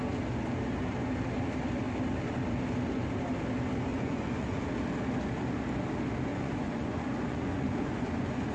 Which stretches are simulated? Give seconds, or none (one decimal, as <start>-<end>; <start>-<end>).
3.9-4.6; 6.3-8.5

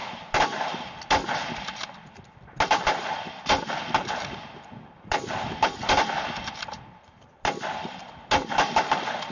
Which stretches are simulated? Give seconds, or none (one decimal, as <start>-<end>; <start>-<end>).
none

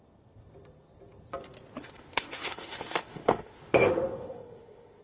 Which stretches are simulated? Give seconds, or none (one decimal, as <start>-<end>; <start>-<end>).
1.8-5.0